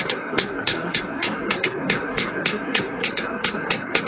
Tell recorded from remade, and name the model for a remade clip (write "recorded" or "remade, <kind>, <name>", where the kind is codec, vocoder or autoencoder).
remade, codec, SNAC